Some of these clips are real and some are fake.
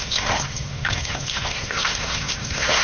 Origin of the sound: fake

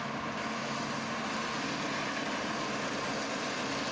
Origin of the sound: real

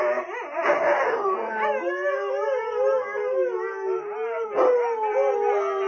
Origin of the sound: real